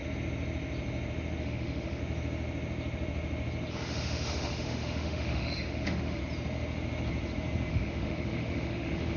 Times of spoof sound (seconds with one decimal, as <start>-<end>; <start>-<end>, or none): 1.4-2.0; 3.7-6.2; 7.7-9.2